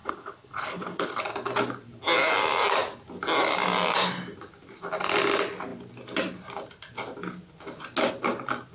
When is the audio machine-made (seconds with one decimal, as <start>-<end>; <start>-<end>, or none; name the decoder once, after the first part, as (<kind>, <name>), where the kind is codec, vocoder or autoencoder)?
0.0-1.2 (codec, HILCodec)